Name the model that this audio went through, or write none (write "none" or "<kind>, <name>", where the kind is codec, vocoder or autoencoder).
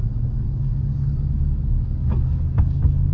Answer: codec, DAC